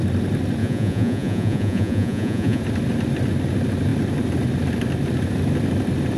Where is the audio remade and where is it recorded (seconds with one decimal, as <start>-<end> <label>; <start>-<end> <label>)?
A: 0.0-0.6 recorded; 0.6-2.6 remade; 2.6-6.2 recorded